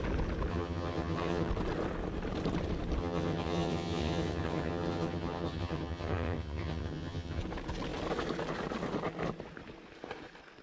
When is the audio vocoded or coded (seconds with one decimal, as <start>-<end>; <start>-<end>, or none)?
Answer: 0.5-1.5; 3.0-7.4